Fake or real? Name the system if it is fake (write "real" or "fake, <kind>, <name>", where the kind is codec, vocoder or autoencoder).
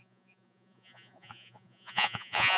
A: fake, vocoder, Vocos